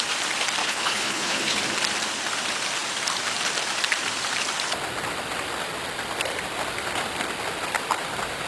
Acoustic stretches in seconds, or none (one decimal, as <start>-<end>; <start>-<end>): 0.0-0.6; 1.6-8.5